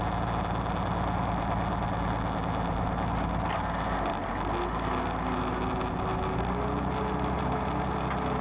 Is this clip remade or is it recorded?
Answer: recorded